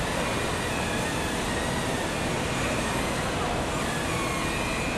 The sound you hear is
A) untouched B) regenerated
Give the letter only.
A